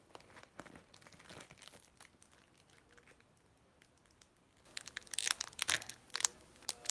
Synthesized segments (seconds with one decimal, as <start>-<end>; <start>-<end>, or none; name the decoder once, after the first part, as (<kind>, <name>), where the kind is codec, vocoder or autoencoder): none